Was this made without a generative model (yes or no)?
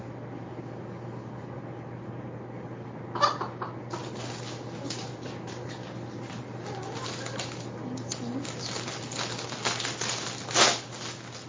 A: yes